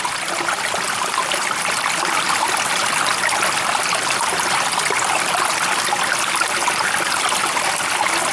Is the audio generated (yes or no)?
no